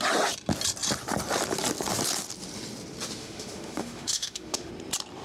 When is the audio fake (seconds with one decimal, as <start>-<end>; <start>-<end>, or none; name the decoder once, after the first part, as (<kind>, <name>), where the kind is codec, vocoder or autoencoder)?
3.2-4.7 (autoencoder, DAC-VAE)